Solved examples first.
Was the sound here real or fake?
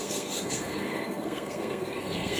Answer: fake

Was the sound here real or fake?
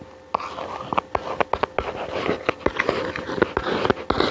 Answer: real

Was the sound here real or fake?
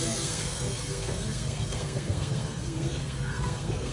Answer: fake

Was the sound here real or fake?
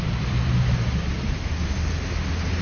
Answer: fake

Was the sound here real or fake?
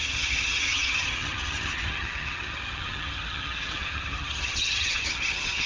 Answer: fake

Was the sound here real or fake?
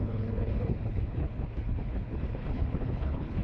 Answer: fake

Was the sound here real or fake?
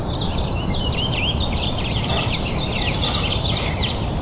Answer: fake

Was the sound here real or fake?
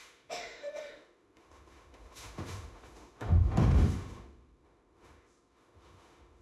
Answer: fake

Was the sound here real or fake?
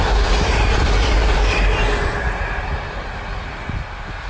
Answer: real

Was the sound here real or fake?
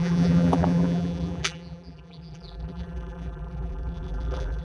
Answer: fake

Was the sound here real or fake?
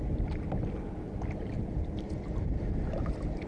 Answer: real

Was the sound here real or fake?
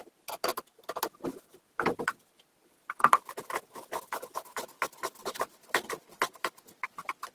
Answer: real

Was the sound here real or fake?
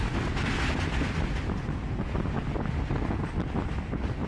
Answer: real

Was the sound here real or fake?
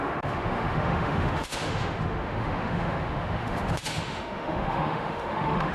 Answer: fake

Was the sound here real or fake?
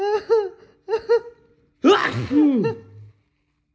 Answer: real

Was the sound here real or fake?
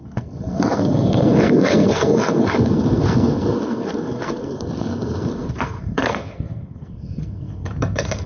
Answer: fake